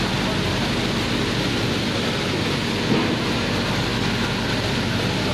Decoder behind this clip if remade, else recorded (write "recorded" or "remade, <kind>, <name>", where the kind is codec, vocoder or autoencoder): recorded